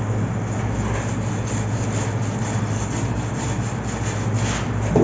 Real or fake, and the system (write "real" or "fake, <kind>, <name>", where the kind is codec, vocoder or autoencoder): real